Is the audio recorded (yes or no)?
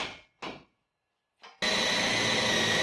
yes